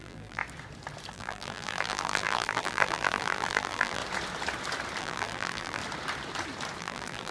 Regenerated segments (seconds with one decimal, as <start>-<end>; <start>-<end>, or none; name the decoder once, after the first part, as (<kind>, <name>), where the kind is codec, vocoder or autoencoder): 0.0-0.4 (vocoder, BigVGAN v2); 1.1-4.0; 5.0-5.8; 6.8-7.3

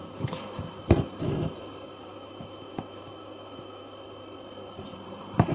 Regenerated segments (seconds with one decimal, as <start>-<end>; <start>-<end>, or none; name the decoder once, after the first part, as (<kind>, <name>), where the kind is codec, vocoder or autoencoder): 0.0-0.6 (autoencoder, DAC-VAE); 2.1-3.9

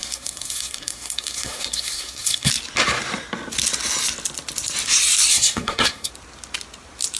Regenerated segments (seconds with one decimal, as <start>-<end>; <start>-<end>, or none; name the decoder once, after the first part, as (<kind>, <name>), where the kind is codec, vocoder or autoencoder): 0.0-2.5 (codec, SNAC); 5.3-6.1

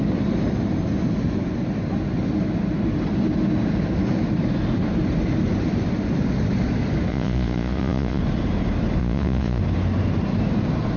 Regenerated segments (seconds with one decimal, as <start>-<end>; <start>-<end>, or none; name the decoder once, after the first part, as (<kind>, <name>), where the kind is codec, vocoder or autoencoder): 7.1-8.2 (vocoder, Vocos); 9.0-9.6

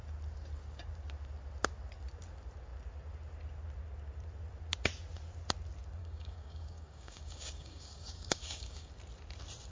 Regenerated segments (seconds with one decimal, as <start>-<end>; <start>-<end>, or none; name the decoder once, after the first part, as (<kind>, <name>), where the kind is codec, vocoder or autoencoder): 6.0-8.9 (codec, DAC)

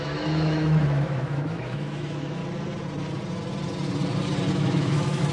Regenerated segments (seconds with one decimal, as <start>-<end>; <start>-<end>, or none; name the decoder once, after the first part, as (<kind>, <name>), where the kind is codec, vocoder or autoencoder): 0.0-2.4 (autoencoder, DAC-VAE); 4.5-5.3